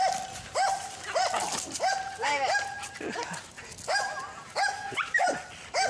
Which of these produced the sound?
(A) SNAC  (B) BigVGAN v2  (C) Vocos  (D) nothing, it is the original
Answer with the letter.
D